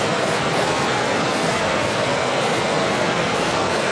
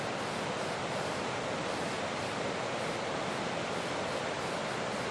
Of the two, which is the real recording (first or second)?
second